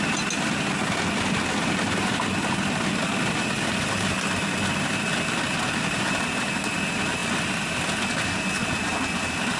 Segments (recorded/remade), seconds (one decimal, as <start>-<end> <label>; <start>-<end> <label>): 0.0-9.6 recorded